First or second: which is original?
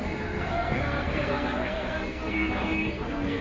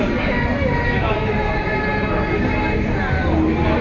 second